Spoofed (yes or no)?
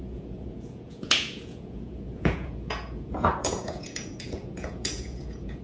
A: yes